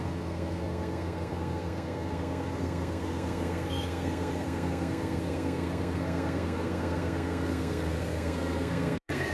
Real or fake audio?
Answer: fake